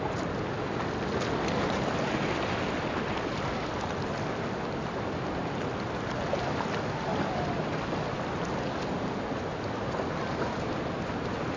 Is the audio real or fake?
real